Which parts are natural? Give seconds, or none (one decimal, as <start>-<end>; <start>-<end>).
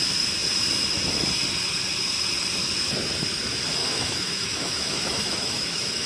0.0-3.8